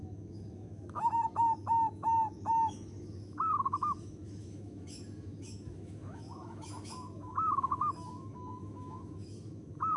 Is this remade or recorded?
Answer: remade